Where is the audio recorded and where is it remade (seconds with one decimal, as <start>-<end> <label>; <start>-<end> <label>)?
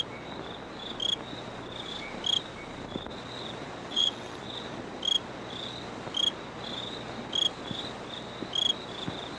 0.0-3.9 recorded; 3.9-4.4 remade; 4.4-9.4 recorded